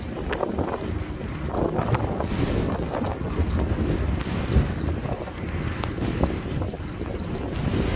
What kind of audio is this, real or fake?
real